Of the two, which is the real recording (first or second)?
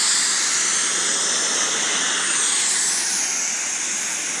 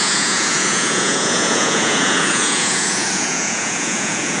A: first